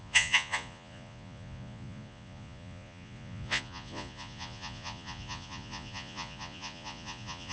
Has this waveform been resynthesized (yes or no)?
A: yes